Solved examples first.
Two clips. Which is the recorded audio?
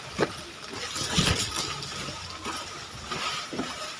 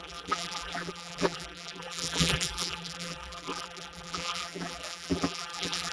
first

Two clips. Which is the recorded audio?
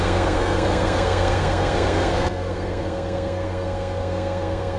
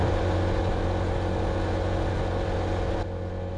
second